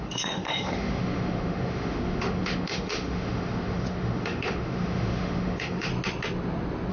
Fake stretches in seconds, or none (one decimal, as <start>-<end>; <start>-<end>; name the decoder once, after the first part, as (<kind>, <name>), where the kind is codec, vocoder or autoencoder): 0.0-5.9 (autoencoder, DAC-VAE)